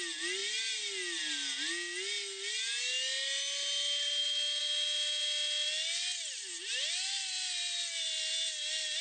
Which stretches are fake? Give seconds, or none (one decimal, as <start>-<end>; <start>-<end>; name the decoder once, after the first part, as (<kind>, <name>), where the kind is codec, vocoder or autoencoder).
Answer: none